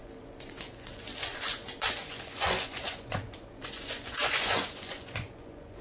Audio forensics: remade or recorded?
remade